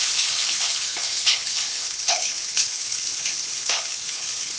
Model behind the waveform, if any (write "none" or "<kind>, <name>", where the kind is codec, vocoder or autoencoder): codec, HILCodec